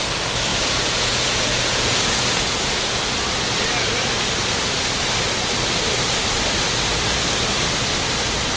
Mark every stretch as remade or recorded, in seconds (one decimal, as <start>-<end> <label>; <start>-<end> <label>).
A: 0.0-0.5 recorded; 0.5-3.0 remade; 3.0-8.6 recorded